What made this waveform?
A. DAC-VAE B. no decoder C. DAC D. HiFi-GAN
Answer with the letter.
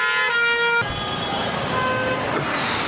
B